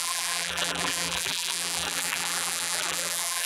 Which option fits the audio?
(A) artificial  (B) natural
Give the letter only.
A